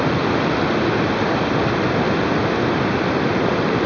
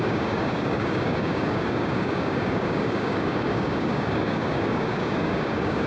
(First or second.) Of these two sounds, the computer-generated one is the second